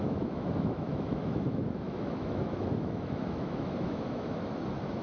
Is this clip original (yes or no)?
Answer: no